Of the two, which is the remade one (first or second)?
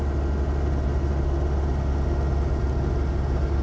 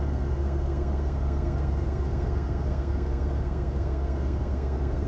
second